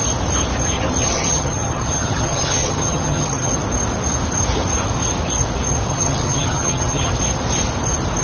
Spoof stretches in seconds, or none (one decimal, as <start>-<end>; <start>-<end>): 1.0-3.5; 5.9-7.1